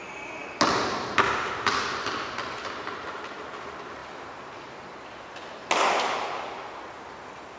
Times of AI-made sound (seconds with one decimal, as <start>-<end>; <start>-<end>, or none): none